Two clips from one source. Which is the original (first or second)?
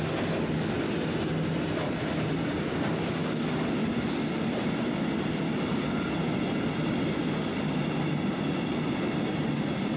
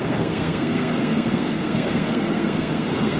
first